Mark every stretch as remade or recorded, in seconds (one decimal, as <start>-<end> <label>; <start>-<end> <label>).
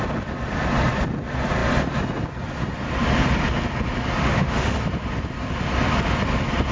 0.0-4.2 recorded; 4.2-4.8 remade; 4.8-6.7 recorded